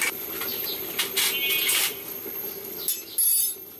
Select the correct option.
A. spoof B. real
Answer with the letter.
B